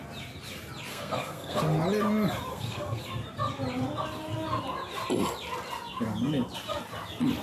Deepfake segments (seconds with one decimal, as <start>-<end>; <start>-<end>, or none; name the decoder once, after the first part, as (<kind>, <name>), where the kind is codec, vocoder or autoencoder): 0.9-1.6 (codec, SNAC); 2.5-3.0